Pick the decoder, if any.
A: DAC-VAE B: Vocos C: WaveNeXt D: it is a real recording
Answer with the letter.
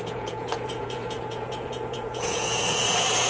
B